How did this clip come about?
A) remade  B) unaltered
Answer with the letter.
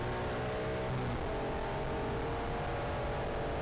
B